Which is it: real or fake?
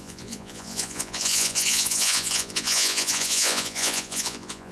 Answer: fake